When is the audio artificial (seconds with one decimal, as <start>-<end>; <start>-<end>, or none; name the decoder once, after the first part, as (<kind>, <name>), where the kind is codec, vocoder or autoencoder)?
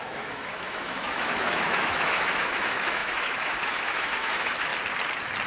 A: 0.0-4.7 (autoencoder, DAC-VAE)